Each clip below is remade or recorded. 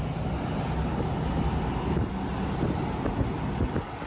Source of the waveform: recorded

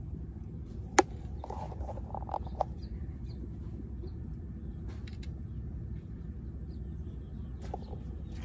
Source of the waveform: recorded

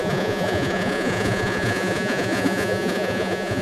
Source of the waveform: remade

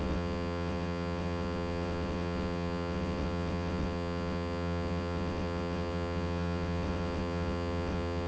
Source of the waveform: remade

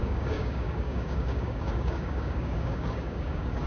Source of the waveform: remade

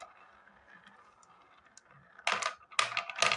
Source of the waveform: recorded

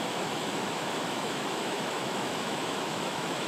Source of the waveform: remade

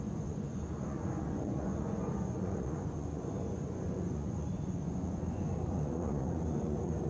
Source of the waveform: remade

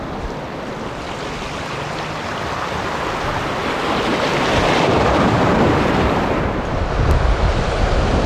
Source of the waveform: recorded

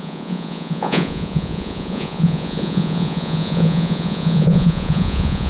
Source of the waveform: remade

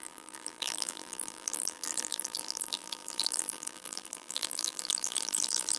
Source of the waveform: remade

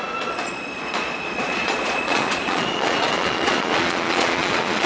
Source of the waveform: remade